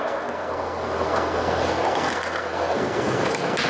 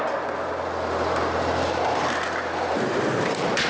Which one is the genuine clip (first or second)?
second